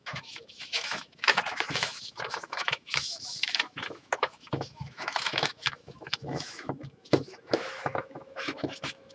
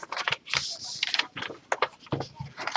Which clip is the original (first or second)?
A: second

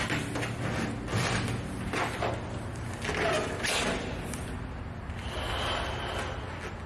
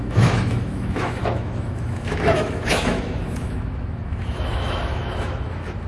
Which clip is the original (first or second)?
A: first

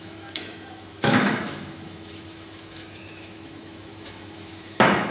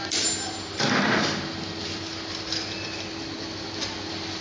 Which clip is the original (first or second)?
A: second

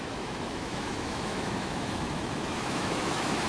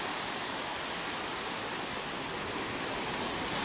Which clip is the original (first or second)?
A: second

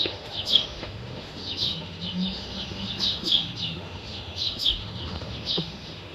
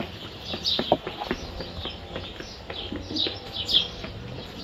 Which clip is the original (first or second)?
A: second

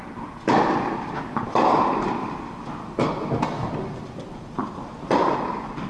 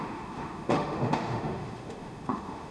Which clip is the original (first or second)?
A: first